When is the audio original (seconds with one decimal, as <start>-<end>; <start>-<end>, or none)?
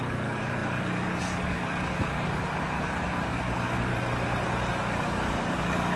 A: 3.9-4.7